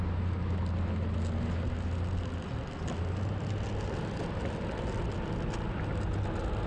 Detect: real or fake real